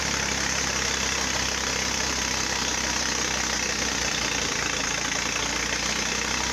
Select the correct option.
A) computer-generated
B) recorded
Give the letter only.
B